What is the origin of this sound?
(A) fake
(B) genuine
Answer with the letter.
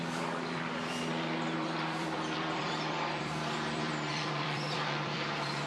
A